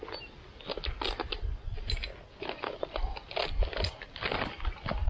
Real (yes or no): yes